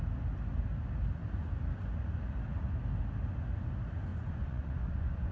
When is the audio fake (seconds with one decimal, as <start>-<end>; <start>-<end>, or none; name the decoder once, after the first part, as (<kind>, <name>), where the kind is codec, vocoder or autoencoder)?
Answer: 4.1-5.3 (vocoder, Vocos)